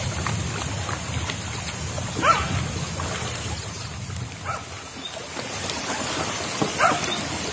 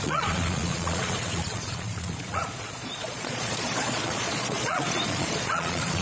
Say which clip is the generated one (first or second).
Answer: second